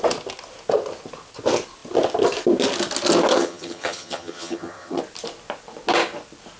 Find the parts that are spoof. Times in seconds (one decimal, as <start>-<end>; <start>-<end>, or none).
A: 3.3-5.0